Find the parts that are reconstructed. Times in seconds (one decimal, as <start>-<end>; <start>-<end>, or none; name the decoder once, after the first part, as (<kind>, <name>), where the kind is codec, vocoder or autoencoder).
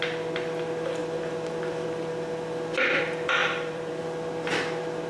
3.4-4.0 (vocoder, BigVGAN v2)